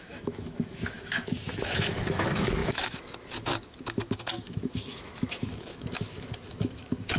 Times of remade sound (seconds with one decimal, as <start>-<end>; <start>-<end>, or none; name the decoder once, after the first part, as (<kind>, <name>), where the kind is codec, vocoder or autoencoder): 0.0-7.2 (autoencoder, DAC-VAE)